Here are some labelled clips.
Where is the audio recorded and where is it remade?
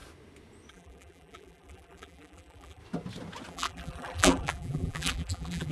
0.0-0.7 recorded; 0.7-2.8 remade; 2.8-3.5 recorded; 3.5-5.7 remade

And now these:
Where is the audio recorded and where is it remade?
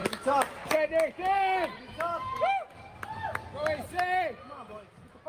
0.0-5.3 recorded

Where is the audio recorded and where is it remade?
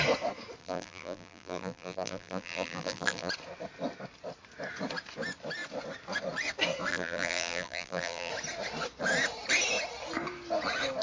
0.0-0.6 recorded; 0.6-3.3 remade; 3.3-6.9 recorded; 6.9-8.3 remade; 8.3-11.0 recorded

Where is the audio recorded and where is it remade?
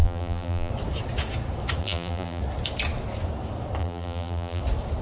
0.0-0.7 remade; 0.7-1.8 recorded; 1.8-2.4 remade; 2.4-3.8 recorded; 3.8-4.6 remade; 4.6-5.0 recorded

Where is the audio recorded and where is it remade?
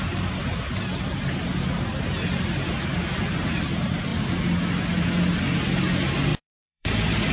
0.0-0.4 recorded; 0.4-1.4 remade; 1.4-6.3 recorded; 6.3-7.3 remade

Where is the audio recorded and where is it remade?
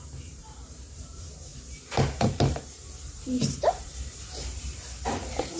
0.0-5.6 remade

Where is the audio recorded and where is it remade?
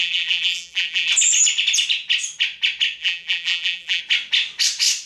0.0-1.1 remade; 1.1-3.0 recorded; 3.0-4.0 remade; 4.0-5.0 recorded